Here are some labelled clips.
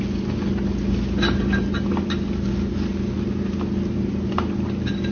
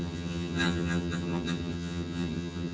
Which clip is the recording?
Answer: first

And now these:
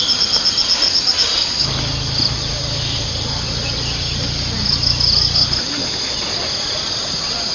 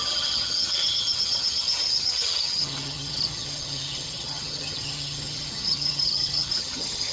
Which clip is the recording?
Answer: first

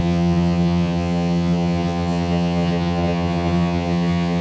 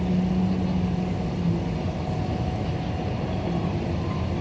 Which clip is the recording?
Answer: second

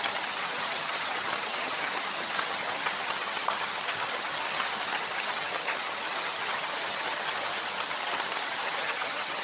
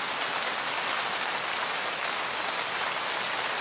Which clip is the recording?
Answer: second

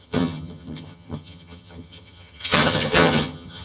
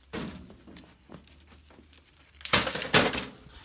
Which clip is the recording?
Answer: second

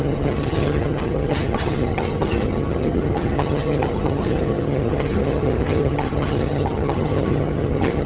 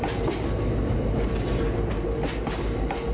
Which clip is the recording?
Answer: second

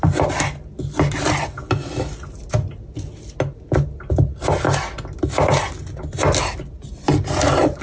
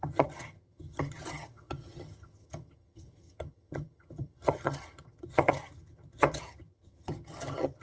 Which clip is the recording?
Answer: first